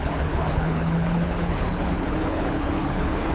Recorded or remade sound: remade